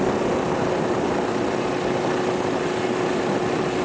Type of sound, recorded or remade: recorded